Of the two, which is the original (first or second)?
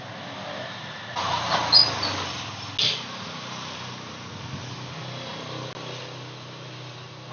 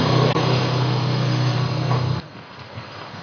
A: first